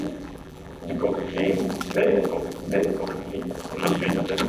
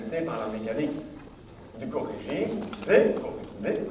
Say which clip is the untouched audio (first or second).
second